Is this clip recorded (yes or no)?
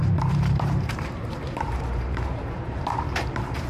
no